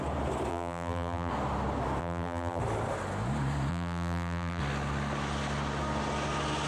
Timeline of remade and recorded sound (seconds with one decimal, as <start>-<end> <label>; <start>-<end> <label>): 0.0-0.5 recorded; 0.5-1.3 remade; 1.3-2.0 recorded; 2.0-2.6 remade; 2.6-3.7 recorded; 3.7-4.6 remade; 4.6-6.7 recorded